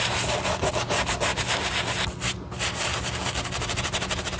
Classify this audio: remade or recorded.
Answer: recorded